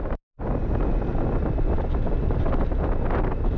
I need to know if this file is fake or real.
real